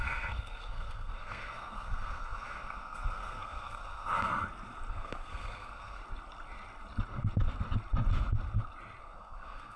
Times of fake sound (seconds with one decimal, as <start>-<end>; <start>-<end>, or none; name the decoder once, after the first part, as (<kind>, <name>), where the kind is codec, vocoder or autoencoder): 0.0-4.3 (codec, SNAC); 4.9-6.0; 9.0-9.8